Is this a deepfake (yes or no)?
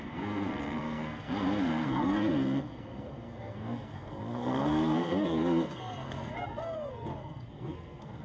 yes